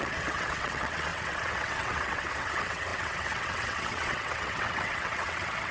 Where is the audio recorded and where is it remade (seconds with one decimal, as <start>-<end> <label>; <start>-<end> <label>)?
0.0-5.7 remade